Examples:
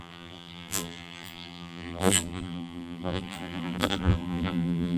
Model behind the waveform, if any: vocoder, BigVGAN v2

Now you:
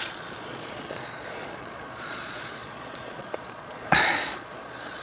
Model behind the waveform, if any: vocoder, Vocos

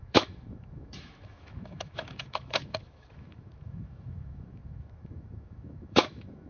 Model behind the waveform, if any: autoencoder, DAC-VAE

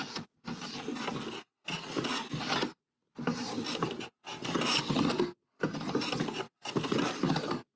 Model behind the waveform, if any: none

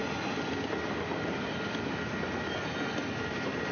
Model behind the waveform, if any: none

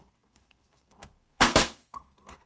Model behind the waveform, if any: codec, SNAC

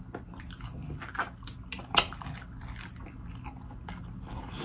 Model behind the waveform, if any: none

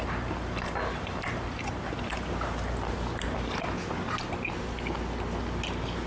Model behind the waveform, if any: none